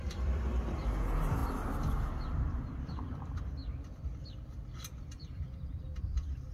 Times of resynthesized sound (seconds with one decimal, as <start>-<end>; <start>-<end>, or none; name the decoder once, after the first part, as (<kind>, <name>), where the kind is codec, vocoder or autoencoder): 0.0-1.4 (vocoder, BigVGAN v2); 2.8-3.6; 5.0-6.5